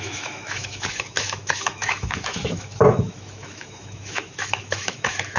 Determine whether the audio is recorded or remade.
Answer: remade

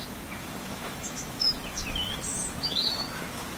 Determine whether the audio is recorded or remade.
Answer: remade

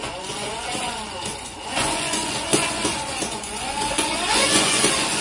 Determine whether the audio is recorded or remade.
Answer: remade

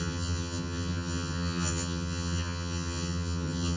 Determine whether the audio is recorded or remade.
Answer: remade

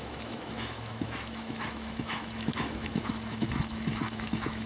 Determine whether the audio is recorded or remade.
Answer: remade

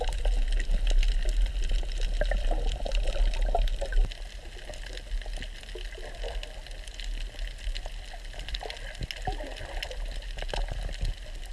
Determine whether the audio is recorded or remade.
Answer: recorded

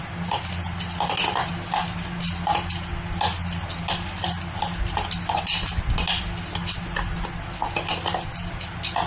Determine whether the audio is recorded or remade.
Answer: recorded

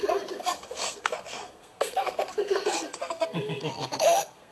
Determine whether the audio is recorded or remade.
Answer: remade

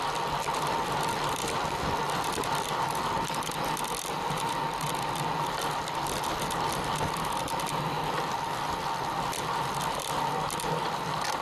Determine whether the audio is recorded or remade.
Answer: recorded